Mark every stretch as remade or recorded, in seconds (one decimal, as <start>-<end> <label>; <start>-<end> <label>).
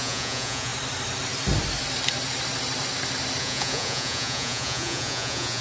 0.0-0.7 remade; 0.7-3.4 recorded; 3.4-5.6 remade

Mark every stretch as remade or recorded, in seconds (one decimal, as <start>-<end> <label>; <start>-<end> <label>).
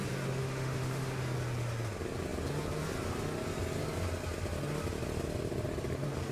0.0-0.4 recorded; 0.4-1.2 remade; 1.2-6.3 recorded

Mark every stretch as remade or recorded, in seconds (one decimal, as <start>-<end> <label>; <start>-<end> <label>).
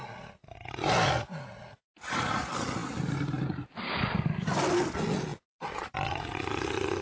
0.0-7.0 recorded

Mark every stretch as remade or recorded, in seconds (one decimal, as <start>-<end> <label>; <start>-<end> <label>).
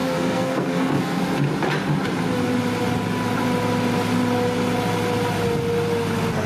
0.0-1.2 remade; 1.2-6.5 recorded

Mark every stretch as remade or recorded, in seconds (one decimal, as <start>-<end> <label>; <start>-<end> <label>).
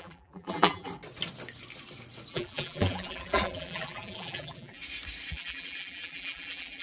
0.0-0.9 remade; 0.9-2.3 recorded; 2.3-4.8 remade; 4.8-5.3 recorded; 5.3-6.8 remade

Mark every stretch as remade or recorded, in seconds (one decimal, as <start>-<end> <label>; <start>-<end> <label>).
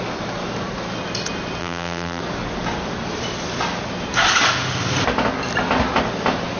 0.0-1.6 recorded; 1.6-2.2 remade; 2.2-6.6 recorded